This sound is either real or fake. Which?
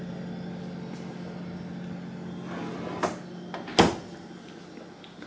real